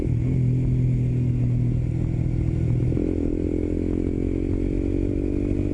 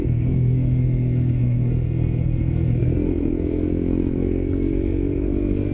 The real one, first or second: first